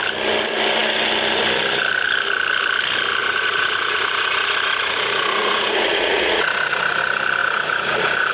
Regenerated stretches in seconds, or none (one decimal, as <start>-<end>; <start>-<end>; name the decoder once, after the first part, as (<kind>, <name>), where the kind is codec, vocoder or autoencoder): 3.2-7.0 (vocoder, Vocos); 7.4-8.3